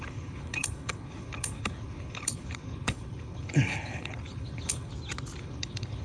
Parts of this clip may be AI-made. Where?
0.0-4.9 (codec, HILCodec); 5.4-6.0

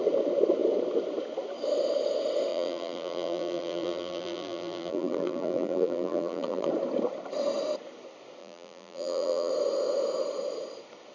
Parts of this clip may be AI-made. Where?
2.5-6.7 (vocoder, BigVGAN v2); 8.4-9.5

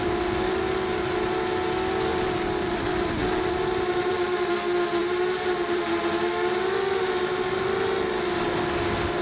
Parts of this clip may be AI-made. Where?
2.1-4.5 (vocoder, BigVGAN v2); 5.0-5.9

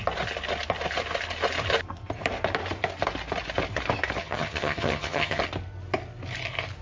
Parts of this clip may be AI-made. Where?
4.2-5.4 (vocoder, HiFi-GAN)

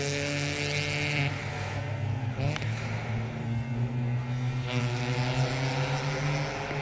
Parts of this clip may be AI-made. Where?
1.5-2.3 (codec, SNAC); 3.4-4.8

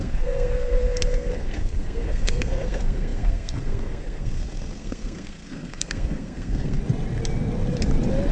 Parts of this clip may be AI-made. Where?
0.0-6.8 (codec, SNAC)

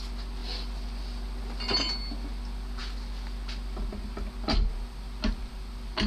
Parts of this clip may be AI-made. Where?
none

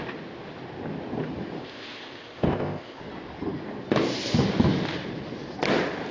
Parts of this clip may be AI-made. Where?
1.6-3.0 (codec, ZipCodec)